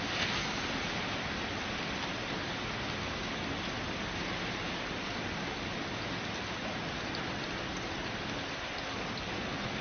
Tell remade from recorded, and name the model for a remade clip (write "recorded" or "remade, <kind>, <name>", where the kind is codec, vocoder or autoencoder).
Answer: recorded